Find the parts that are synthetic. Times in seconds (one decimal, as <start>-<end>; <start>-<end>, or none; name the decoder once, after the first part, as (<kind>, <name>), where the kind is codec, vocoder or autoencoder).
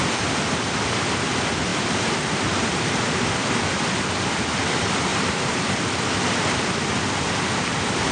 1.7-3.3 (vocoder, BigVGAN v2); 5.1-5.8